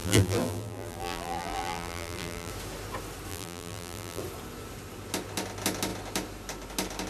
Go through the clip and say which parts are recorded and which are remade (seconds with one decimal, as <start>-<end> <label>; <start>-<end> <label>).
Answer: 0.0-2.5 remade; 2.5-3.3 recorded; 3.3-4.2 remade; 4.2-7.1 recorded